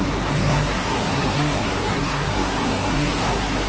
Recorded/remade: remade